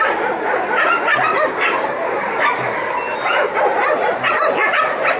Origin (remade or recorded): recorded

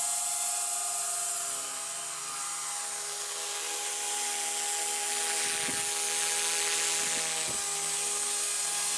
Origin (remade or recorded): recorded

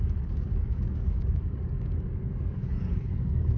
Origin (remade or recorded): remade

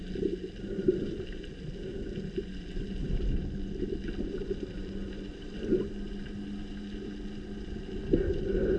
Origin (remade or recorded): recorded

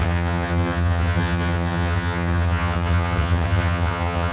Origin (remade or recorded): remade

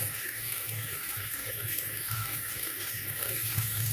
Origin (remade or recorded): remade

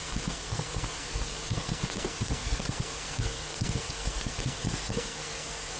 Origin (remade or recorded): remade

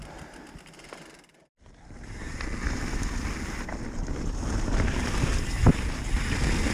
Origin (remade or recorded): recorded